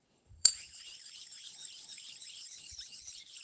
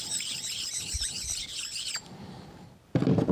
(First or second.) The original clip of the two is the second